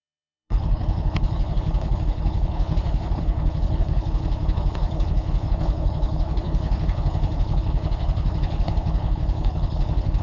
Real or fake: fake